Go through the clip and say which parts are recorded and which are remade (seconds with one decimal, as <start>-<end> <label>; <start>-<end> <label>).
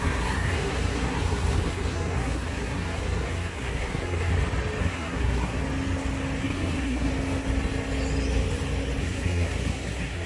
0.0-4.3 remade; 4.3-4.8 recorded; 4.8-5.6 remade; 5.6-6.4 recorded; 6.4-7.1 remade; 7.1-9.0 recorded; 9.0-10.3 remade